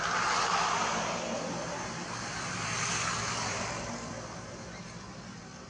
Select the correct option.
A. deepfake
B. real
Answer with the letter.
A